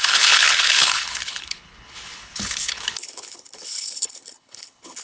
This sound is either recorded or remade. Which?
remade